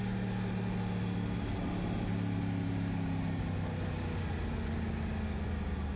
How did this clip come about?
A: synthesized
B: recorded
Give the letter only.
B